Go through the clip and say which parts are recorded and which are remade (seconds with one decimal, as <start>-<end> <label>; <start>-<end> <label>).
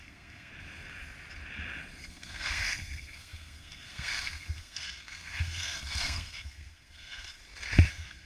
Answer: 0.0-0.5 remade; 0.5-2.1 recorded; 2.1-7.4 remade; 7.4-7.9 recorded; 7.9-8.3 remade